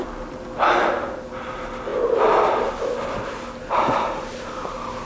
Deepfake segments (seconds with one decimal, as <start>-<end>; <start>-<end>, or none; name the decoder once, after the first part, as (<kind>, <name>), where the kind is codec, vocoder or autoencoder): none